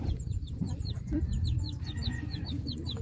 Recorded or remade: remade